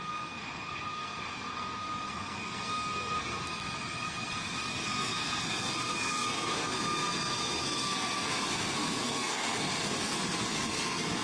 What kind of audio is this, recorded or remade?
remade